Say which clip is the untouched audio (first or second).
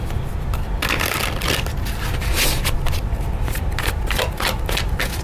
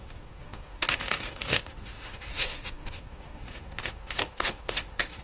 first